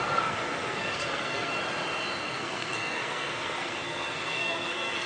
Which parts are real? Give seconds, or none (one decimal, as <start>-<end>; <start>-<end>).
1.5-2.2